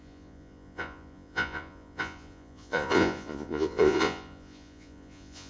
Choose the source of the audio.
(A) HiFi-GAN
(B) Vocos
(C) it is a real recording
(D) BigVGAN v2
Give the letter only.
B